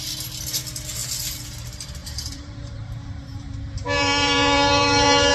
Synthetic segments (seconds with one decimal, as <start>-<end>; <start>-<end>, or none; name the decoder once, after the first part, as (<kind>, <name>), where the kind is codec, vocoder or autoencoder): 2.0-5.3 (vocoder, BigVGAN v2)